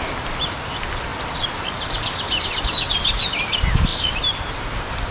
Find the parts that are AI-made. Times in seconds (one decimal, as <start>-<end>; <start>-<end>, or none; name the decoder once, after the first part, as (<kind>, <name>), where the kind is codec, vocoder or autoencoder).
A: none